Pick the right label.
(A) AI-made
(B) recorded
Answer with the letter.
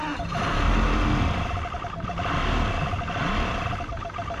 B